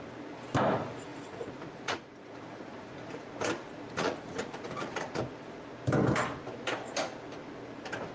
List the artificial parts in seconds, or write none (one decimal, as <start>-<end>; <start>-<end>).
1.1-5.2